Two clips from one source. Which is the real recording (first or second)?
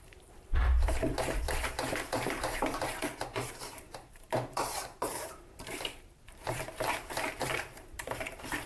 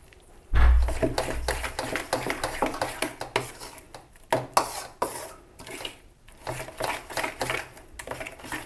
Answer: second